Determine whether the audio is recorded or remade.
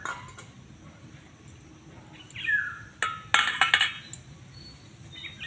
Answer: recorded